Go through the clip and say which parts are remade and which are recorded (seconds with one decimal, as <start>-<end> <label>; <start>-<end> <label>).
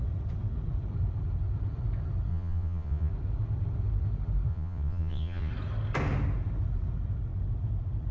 0.0-2.3 recorded; 2.3-3.1 remade; 3.1-4.5 recorded; 4.5-5.5 remade; 5.5-8.1 recorded